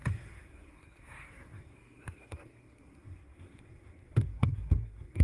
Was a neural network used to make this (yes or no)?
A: yes